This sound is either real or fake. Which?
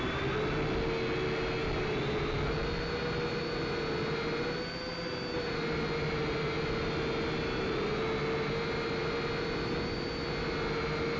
real